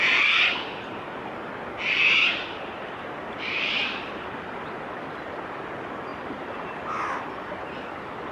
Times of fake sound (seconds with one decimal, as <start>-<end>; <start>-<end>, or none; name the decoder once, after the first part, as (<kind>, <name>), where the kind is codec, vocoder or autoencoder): 2.3-3.7 (vocoder, BigVGAN v2); 6.1-7.5

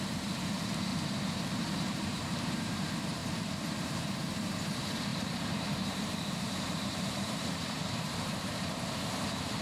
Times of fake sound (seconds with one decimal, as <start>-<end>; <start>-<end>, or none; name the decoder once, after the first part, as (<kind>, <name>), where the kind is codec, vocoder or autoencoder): 0.0-0.9 (vocoder, BigVGAN v2); 1.6-3.2; 3.8-9.6

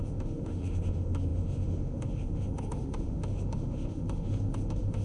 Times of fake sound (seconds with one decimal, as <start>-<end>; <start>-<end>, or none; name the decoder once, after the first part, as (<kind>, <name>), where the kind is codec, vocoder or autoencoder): 0.0-5.0 (autoencoder, DAC-VAE)

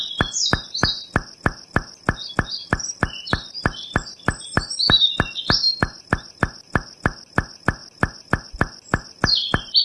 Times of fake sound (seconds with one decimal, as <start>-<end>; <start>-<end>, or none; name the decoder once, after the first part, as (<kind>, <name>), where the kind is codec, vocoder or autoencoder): 2.6-4.4 (vocoder, BigVGAN v2)

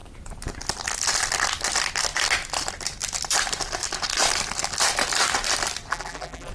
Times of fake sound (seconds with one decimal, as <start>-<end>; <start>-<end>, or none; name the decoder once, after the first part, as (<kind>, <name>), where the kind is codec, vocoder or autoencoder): 5.9-6.5 (vocoder, BigVGAN v2)

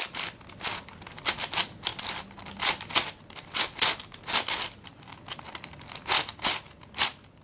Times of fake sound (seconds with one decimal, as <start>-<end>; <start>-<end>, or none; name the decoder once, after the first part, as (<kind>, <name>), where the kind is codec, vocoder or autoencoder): 1.9-2.4 (vocoder, BigVGAN v2)

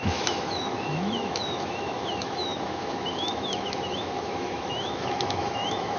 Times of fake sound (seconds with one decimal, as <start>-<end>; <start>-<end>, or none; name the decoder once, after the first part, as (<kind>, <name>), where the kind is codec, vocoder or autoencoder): 0.0-6.0 (autoencoder, DAC-VAE)